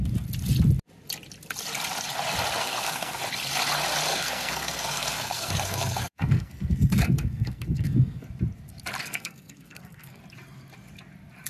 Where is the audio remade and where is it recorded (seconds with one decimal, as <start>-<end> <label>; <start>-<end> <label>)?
0.0-2.6 recorded; 2.6-3.2 remade; 3.2-4.1 recorded; 4.1-8.3 remade; 8.3-9.0 recorded; 9.0-10.2 remade; 10.2-11.5 recorded